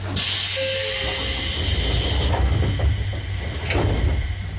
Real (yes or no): yes